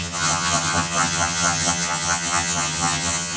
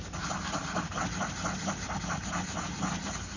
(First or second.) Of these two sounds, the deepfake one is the first